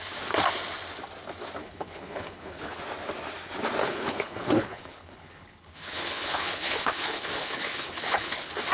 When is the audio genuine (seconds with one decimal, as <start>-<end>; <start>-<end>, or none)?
0.0-1.6; 2.8-3.8